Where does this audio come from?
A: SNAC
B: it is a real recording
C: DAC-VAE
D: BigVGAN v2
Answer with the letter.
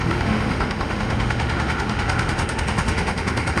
C